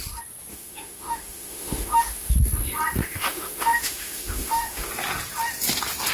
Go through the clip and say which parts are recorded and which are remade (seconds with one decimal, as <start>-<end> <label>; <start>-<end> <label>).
0.0-0.5 recorded; 0.5-2.3 remade; 2.3-3.0 recorded; 3.0-4.9 remade; 4.9-6.1 recorded